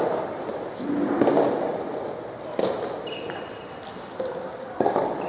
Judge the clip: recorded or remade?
recorded